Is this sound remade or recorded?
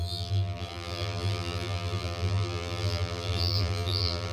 remade